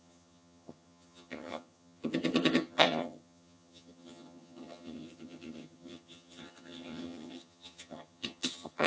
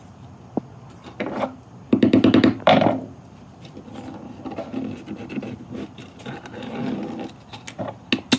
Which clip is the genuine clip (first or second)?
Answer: second